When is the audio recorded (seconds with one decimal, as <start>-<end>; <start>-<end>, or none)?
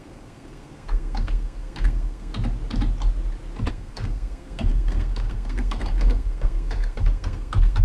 2.3-3.7